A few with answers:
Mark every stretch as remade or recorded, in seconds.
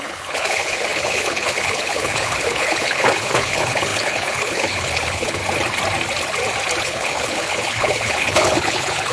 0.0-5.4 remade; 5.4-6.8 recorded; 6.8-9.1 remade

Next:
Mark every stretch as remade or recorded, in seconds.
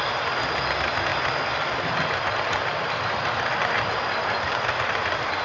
0.0-4.2 recorded; 4.2-4.7 remade; 4.7-5.4 recorded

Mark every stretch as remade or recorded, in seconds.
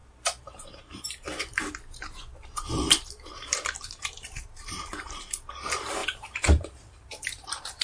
0.0-7.8 remade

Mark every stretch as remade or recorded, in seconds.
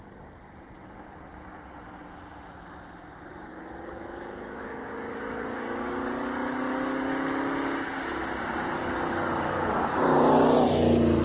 0.0-3.3 recorded; 3.3-7.1 remade; 7.1-8.7 recorded; 8.7-9.9 remade; 9.9-11.2 recorded